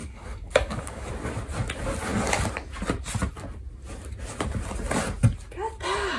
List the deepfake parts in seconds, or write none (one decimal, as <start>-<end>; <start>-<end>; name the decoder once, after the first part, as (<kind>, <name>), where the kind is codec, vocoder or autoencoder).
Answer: 0.0-1.1 (codec, DAC)